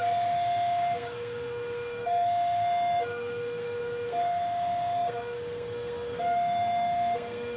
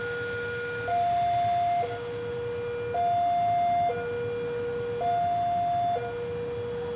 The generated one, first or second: first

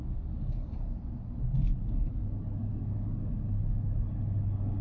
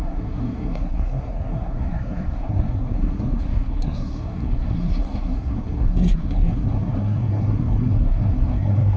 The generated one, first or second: second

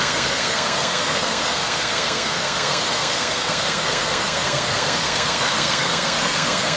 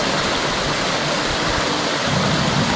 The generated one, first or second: first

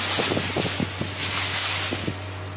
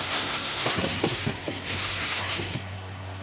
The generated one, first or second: second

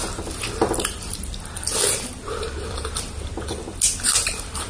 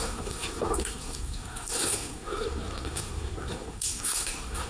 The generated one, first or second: second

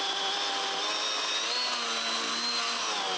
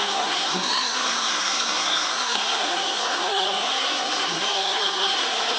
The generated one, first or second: second